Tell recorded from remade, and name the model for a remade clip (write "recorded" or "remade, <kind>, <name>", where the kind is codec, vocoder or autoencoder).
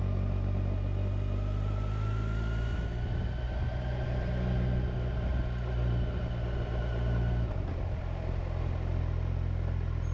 recorded